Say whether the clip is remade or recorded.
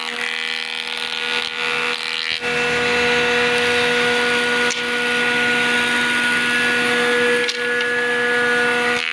recorded